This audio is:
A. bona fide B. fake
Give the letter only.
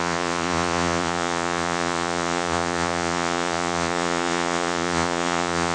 B